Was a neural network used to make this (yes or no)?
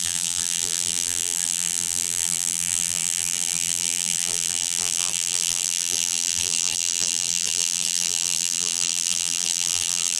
yes